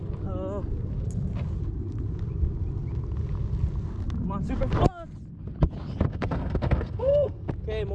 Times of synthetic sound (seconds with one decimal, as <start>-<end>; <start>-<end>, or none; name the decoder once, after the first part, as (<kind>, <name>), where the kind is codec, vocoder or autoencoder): 6.1-7.5 (codec, SNAC)